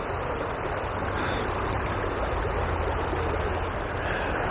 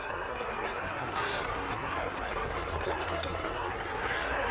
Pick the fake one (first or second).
second